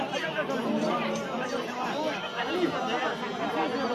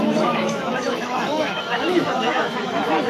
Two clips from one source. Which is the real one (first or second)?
first